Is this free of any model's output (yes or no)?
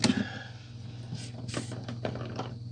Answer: yes